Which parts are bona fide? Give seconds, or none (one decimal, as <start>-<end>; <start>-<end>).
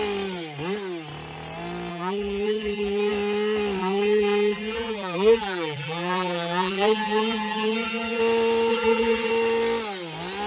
0.0-1.9; 3.1-3.8; 8.2-8.7; 9.3-10.5